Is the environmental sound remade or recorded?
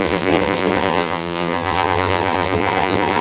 remade